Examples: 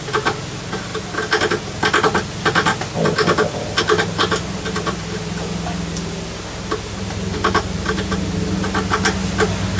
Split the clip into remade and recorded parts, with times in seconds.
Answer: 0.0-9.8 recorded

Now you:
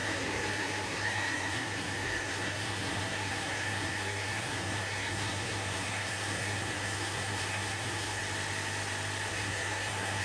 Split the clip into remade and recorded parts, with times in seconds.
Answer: 0.0-8.2 remade; 8.2-9.3 recorded; 9.3-10.2 remade

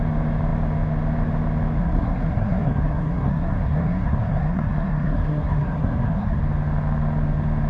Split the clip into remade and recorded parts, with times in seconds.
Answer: 0.0-1.8 recorded; 1.8-6.4 remade; 6.4-7.7 recorded

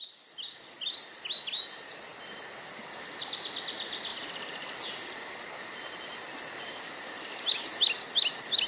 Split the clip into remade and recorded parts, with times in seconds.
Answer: 0.0-8.7 recorded

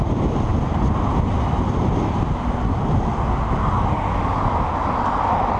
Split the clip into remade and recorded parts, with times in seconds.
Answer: 0.0-5.6 recorded